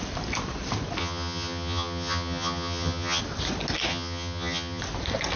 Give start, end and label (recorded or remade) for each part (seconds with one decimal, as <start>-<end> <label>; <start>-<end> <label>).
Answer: 0.0-1.0 recorded; 1.0-3.2 remade; 3.2-3.9 recorded; 3.9-4.8 remade; 4.8-5.4 recorded